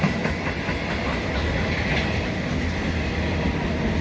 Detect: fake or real real